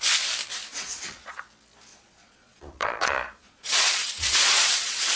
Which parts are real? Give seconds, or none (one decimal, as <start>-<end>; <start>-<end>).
0.0-0.7; 1.4-1.9